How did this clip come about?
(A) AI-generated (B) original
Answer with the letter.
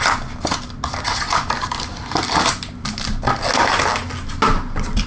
B